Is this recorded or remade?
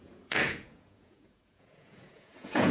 remade